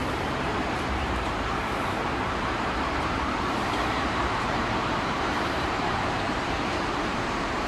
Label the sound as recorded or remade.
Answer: remade